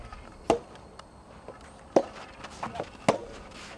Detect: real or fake real